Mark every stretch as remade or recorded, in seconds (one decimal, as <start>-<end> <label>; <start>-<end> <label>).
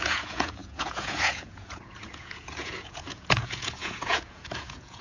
0.0-5.0 remade